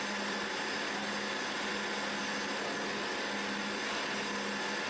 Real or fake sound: real